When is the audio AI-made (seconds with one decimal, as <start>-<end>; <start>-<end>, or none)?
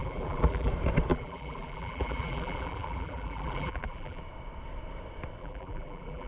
0.0-0.7; 1.1-4.2; 5.4-6.3